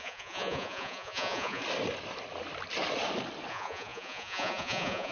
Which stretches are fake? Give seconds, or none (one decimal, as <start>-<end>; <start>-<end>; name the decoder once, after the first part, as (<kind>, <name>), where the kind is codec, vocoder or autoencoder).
0.0-1.6 (vocoder, Vocos); 3.5-5.1